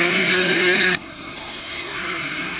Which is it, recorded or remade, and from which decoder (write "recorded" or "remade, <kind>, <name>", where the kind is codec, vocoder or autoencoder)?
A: remade, codec, SNAC